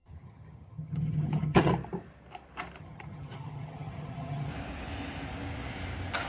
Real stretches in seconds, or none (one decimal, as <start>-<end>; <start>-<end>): 1.7-2.8; 4.5-6.3